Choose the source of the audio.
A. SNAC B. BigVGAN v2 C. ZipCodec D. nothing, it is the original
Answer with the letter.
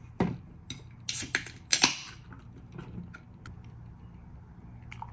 D